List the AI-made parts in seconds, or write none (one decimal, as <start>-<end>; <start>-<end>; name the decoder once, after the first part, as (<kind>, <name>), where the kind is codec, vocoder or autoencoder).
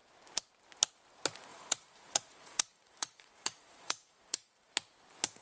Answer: 1.5-4.7 (vocoder, Vocos)